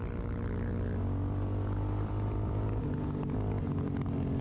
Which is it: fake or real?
real